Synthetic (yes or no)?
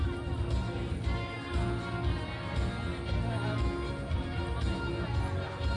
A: no